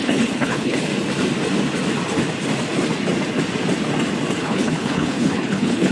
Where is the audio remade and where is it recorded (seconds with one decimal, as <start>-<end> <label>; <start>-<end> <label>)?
0.0-0.9 remade; 0.9-4.4 recorded; 4.4-5.9 remade